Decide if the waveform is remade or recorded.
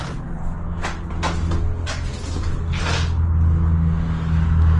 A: recorded